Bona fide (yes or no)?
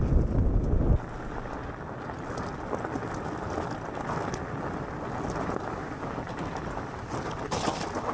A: yes